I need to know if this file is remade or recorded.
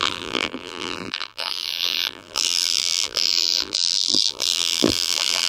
remade